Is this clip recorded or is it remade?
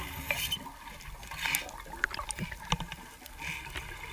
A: recorded